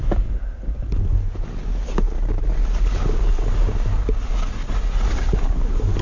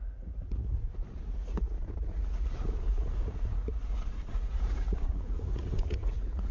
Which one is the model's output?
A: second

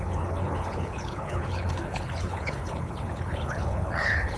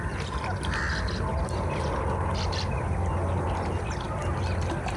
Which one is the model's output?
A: first